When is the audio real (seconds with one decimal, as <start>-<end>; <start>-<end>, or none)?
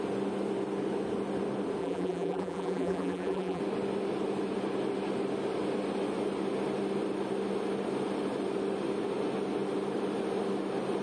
0.0-1.8; 3.6-11.0